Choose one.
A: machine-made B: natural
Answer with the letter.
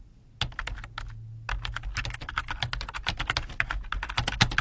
B